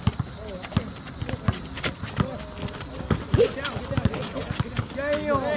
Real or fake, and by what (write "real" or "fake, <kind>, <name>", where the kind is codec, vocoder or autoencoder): real